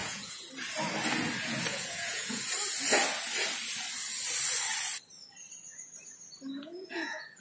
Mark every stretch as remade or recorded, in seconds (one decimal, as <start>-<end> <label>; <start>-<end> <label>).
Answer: 0.0-0.5 remade; 0.5-1.7 recorded; 1.7-2.4 remade; 2.4-6.6 recorded; 6.6-7.4 remade